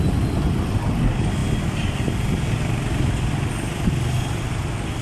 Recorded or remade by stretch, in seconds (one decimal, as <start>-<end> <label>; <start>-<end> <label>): 0.0-5.0 recorded

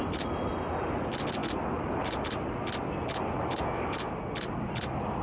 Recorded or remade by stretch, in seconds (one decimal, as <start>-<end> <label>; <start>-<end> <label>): 0.0-5.2 recorded